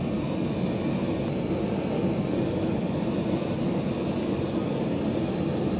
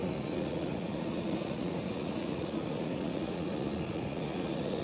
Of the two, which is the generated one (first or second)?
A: second